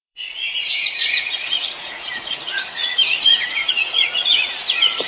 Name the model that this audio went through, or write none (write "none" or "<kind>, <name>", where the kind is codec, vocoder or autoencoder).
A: vocoder, Vocos